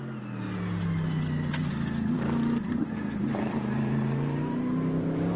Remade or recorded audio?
recorded